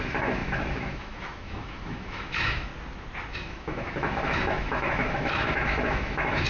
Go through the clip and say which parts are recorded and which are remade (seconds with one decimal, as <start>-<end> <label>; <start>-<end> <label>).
0.0-2.7 remade; 2.7-3.3 recorded; 3.3-6.5 remade